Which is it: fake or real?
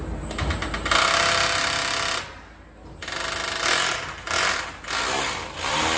real